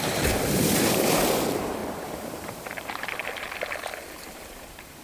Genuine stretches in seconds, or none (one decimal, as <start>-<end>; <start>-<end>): 3.2-4.2